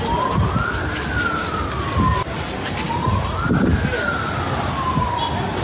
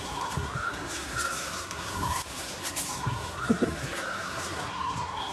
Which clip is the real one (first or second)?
first